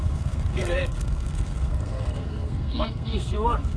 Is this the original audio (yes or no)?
no